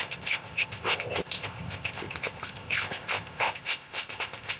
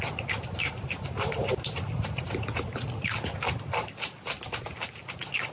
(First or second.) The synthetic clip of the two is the first